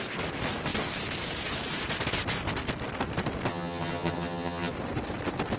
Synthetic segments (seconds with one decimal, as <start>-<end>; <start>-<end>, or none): 3.5-4.7